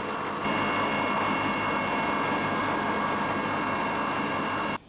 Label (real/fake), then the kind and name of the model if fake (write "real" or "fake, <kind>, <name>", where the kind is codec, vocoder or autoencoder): real